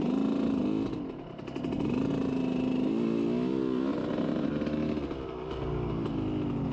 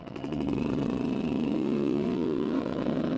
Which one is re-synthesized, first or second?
second